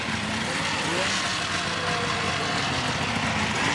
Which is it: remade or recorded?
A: recorded